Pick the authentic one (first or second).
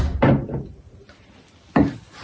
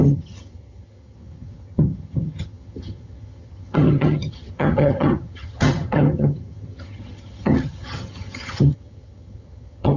first